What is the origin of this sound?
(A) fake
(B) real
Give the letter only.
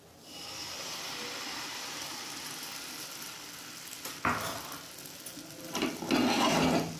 B